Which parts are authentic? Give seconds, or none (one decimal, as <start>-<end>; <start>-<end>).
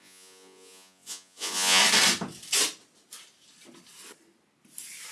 1.8-5.1